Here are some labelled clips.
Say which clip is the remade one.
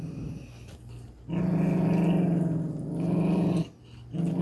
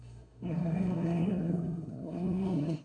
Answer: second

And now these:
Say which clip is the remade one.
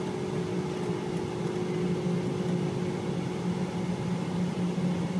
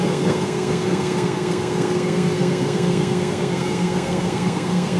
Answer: second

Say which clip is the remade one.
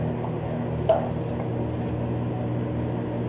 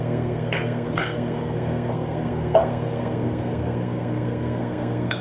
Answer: second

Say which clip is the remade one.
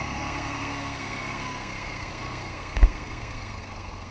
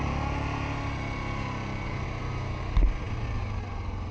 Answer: first